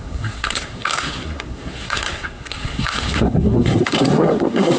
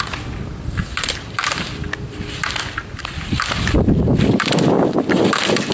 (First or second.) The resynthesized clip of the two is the first